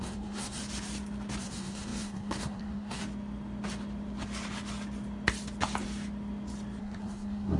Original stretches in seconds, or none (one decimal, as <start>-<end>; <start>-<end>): 0.6-1.4; 3.0-6.8